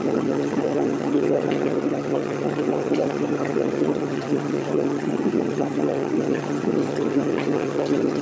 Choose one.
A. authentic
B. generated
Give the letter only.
B